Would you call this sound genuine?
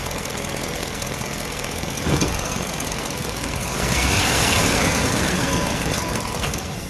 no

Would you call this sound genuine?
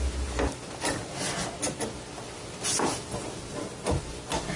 yes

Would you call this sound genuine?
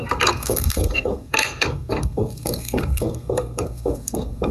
no